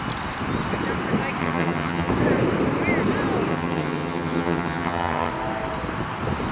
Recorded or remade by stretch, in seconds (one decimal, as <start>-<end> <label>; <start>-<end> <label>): 0.0-1.4 recorded; 1.4-2.1 remade; 2.1-3.5 recorded; 3.5-5.3 remade; 5.3-6.5 recorded